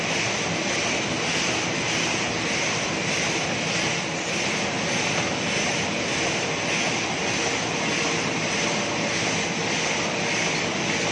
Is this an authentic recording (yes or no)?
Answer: yes